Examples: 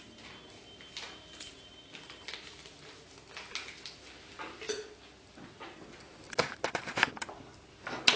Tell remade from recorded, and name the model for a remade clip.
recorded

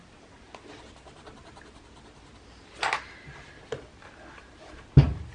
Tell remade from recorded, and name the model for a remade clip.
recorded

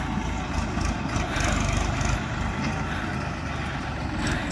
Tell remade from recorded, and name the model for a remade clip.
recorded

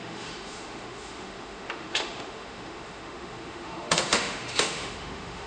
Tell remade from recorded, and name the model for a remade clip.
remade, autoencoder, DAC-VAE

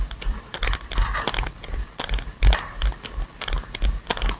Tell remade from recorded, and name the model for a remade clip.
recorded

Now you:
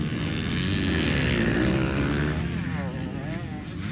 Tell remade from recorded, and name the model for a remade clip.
recorded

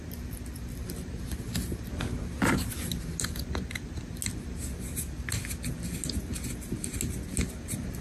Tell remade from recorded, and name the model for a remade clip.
recorded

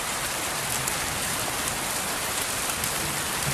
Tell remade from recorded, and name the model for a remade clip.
remade, vocoder, BigVGAN v2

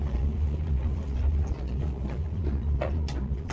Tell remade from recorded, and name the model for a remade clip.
remade, vocoder, Vocos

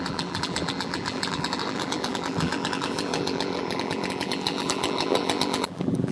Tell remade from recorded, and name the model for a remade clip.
remade, vocoder, BigVGAN v2